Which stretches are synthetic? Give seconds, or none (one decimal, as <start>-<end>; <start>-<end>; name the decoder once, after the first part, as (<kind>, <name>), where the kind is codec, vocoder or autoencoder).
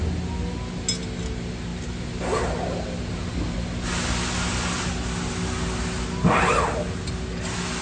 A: none